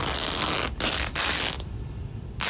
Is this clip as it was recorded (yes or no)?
yes